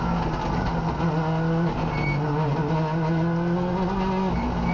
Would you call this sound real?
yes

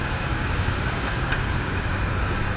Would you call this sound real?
no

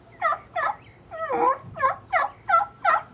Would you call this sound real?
yes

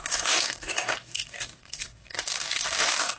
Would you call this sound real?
no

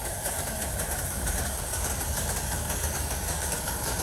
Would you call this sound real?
no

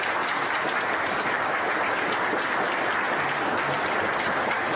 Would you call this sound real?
yes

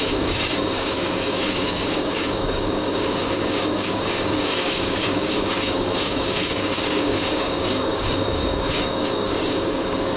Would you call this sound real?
no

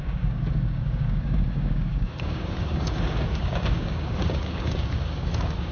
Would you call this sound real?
no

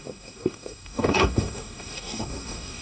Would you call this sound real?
no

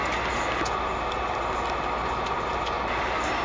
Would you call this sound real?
yes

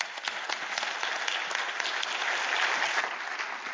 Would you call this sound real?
yes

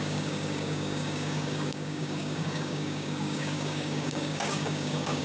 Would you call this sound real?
no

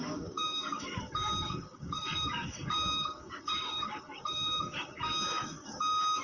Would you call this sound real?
no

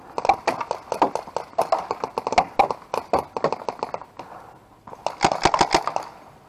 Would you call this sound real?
yes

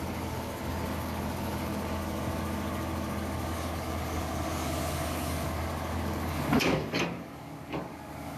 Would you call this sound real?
no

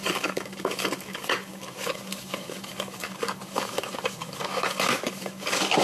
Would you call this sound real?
no